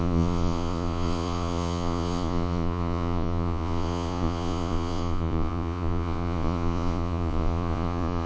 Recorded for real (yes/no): no